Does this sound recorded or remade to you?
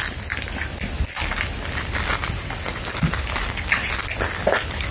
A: recorded